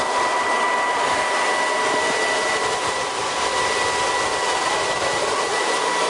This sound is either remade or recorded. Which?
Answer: recorded